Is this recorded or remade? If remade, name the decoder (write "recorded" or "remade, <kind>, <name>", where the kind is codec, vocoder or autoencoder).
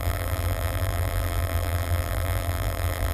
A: remade, vocoder, BigVGAN v2